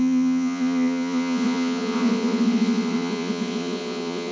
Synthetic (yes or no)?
yes